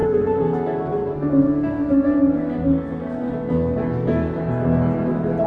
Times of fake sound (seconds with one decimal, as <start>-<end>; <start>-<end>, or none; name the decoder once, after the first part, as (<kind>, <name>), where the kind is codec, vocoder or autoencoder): 0.0-3.3 (codec, SNAC)